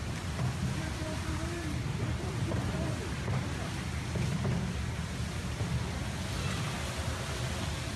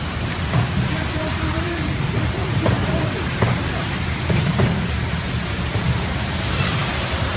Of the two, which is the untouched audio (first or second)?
first